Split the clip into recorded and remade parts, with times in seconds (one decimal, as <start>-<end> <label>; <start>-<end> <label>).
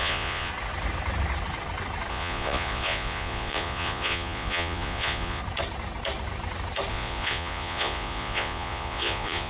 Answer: 0.0-0.5 remade; 0.5-2.1 recorded; 2.1-5.4 remade; 5.4-6.9 recorded; 6.9-9.5 remade